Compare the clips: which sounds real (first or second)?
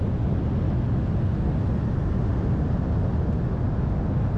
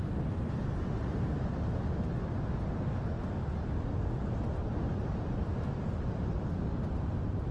first